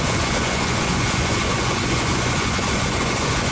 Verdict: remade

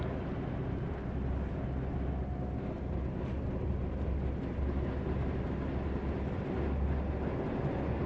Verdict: recorded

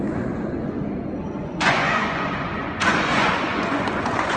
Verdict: remade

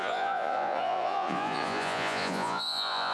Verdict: remade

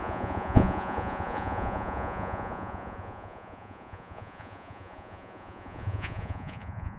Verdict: remade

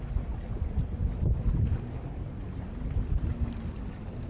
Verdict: recorded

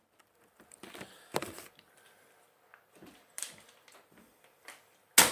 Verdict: recorded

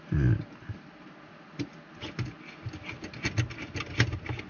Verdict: recorded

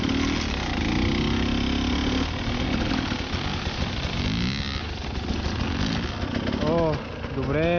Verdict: recorded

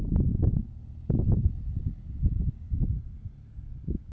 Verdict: recorded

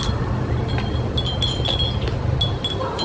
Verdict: recorded